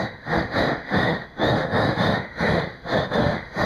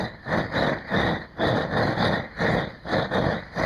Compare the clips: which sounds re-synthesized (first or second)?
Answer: first